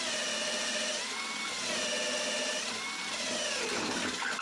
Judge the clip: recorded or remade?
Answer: recorded